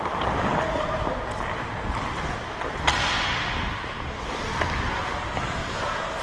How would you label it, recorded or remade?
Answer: recorded